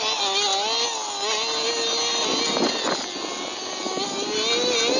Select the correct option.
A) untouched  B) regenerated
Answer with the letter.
A